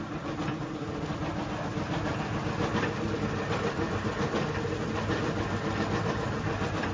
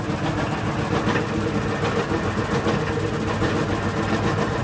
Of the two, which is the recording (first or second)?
second